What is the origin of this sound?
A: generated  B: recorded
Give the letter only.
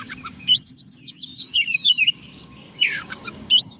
A